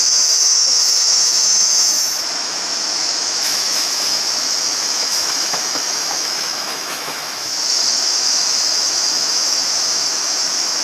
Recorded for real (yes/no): no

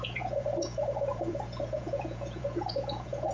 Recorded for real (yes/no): no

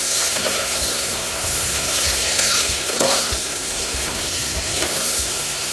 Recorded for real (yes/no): no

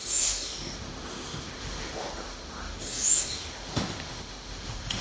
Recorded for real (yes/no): no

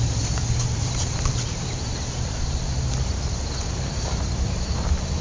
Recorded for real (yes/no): no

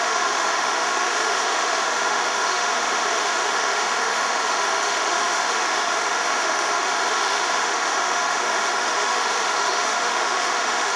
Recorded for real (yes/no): no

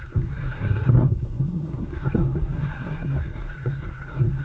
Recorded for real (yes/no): no